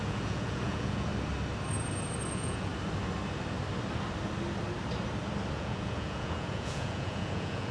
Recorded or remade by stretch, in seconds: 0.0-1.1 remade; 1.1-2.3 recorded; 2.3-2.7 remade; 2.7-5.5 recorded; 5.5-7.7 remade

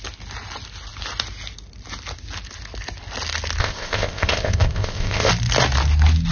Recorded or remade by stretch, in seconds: 0.0-3.6 recorded; 3.6-5.3 remade; 5.3-6.3 recorded

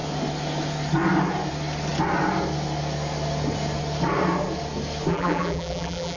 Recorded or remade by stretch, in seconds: 0.0-5.1 recorded; 5.1-6.2 remade